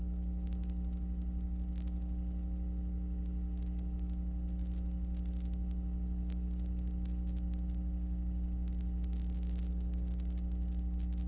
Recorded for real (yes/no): yes